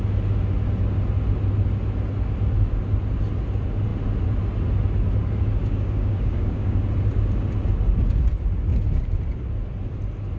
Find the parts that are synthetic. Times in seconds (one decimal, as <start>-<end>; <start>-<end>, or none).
5.6-6.8